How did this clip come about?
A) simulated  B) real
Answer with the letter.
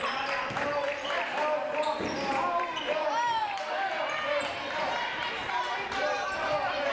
B